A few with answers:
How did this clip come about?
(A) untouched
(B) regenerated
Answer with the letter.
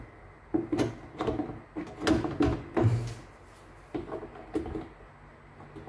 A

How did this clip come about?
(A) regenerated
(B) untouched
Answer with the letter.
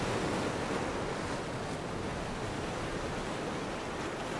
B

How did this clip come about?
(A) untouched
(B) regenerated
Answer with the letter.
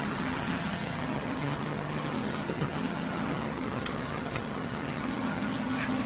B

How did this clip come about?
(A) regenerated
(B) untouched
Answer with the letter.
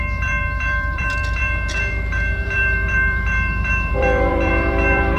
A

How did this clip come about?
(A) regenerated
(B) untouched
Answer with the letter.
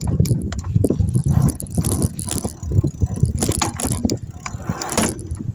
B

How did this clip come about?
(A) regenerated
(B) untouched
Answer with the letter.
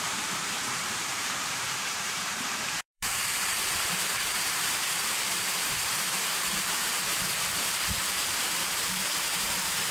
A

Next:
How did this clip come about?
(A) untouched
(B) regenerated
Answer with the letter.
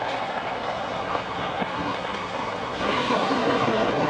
B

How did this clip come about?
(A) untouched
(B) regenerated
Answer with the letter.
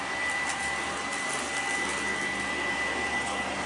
A